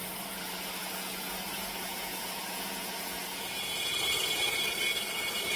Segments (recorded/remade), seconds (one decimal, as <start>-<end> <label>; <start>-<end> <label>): 0.0-0.8 recorded; 0.8-4.0 remade; 4.0-5.6 recorded

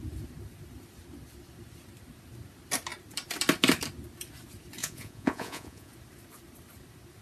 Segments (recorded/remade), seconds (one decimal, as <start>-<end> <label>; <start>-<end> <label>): 0.0-4.8 recorded; 4.8-5.9 remade; 5.9-7.2 recorded

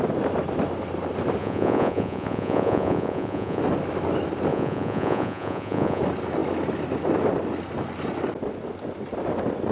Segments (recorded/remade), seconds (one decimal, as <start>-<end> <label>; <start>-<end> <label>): 0.0-1.4 recorded; 1.4-3.6 remade; 3.6-4.5 recorded; 4.5-6.0 remade; 6.0-9.7 recorded

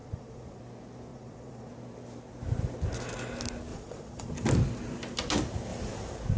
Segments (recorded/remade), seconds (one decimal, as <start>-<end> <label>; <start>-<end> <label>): 0.0-0.6 remade; 0.6-1.1 recorded; 1.1-1.7 remade; 1.7-3.7 recorded; 3.7-4.3 remade; 4.3-6.4 recorded

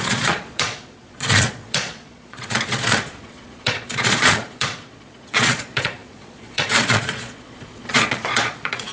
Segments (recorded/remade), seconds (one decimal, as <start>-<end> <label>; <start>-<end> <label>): 0.0-8.9 remade

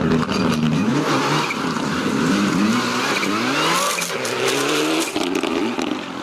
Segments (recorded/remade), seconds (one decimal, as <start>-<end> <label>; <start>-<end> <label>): 0.0-6.2 recorded

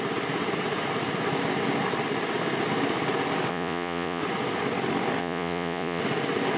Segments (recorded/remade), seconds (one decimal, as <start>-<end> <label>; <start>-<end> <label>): 0.0-3.5 recorded; 3.5-4.2 remade; 4.2-5.2 recorded; 5.2-6.0 remade; 6.0-6.6 recorded

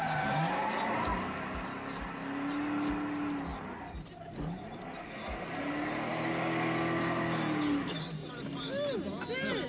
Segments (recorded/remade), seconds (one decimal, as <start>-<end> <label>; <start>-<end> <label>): 0.0-9.7 recorded